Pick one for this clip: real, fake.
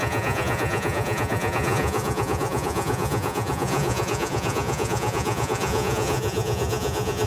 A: fake